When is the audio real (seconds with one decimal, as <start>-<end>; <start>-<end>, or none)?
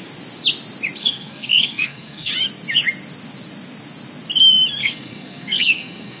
0.0-1.0; 2.3-4.8